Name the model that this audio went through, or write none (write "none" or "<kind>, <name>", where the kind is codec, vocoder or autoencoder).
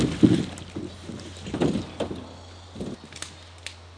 none